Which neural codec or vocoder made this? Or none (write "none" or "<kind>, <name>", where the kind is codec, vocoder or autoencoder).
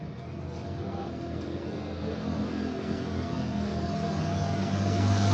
codec, SNAC